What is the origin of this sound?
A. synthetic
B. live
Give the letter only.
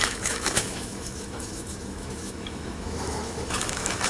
A